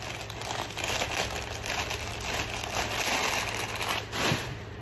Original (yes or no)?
yes